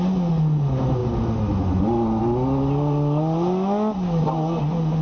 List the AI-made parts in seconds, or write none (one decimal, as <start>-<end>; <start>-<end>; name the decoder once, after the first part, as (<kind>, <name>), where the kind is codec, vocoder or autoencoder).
none

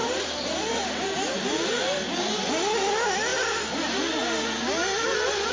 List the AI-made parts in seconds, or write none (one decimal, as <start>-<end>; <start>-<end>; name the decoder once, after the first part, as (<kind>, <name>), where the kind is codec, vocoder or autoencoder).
none